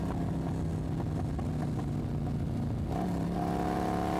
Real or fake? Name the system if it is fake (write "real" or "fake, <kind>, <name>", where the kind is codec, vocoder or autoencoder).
real